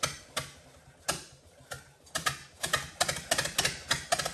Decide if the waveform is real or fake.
real